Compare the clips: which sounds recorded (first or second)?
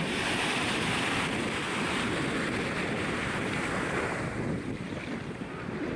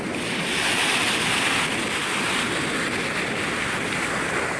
second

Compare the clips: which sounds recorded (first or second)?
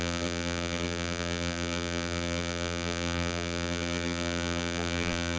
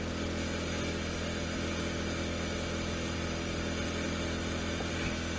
second